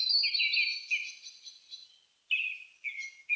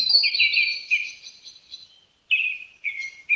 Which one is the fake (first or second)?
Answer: second